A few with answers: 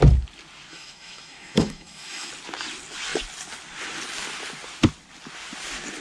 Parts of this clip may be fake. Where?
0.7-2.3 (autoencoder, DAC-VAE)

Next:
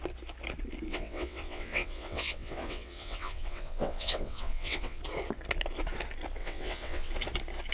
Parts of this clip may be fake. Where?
0.9-5.0 (vocoder, WaveNeXt); 6.4-7.1

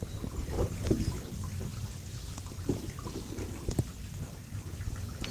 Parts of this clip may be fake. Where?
0.0-5.3 (vocoder, BigVGAN v2)

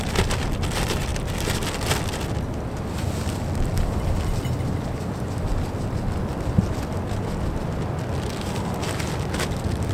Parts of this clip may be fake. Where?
none